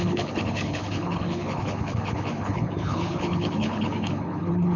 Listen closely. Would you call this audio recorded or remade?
remade